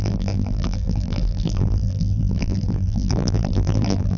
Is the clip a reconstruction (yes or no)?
yes